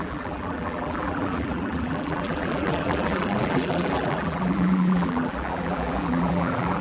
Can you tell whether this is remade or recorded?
remade